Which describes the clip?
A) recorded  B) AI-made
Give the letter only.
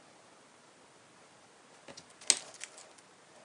A